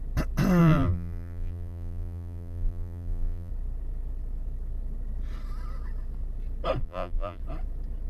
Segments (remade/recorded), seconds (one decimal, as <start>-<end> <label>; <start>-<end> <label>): 0.0-0.6 recorded; 0.6-3.5 remade; 3.5-6.8 recorded; 6.8-7.4 remade; 7.4-8.1 recorded